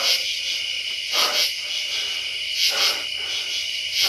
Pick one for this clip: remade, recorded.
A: recorded